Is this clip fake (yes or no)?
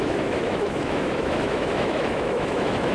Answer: yes